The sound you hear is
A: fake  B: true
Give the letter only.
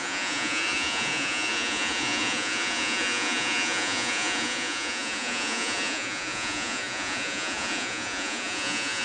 A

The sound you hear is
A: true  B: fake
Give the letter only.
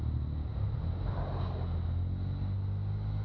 A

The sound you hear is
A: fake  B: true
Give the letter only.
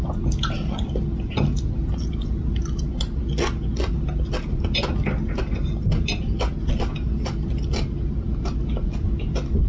B